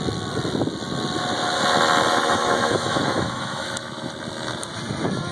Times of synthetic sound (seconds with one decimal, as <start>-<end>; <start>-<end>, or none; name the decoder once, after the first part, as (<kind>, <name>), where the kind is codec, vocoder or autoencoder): 2.1-4.1 (autoencoder, DAC-VAE)